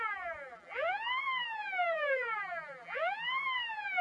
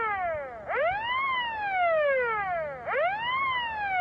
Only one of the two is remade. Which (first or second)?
first